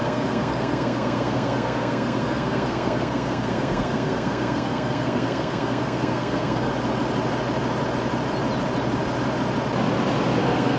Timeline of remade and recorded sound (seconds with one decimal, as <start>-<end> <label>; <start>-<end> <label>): 0.0-6.7 remade; 6.7-10.4 recorded; 10.4-10.8 remade